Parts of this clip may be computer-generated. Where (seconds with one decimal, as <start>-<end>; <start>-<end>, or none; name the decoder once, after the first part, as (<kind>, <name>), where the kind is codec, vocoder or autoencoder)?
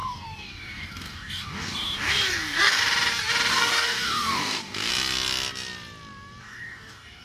0.0-2.8 (codec, DAC); 3.5-4.9; 6.4-7.2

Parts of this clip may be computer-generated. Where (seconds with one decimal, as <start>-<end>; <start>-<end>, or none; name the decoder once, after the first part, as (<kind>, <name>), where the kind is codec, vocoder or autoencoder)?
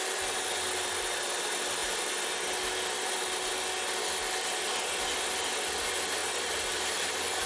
none